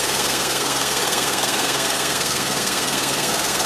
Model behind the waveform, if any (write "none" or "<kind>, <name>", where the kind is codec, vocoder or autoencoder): codec, SNAC